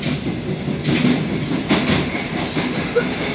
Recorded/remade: recorded